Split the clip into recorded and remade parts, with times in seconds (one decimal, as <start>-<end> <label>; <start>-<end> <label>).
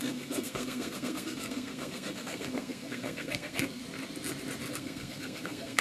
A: 0.0-3.8 remade; 3.8-4.7 recorded; 4.7-5.8 remade